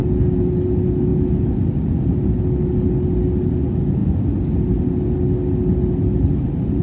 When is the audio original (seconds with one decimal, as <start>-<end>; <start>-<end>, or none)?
0.0-6.8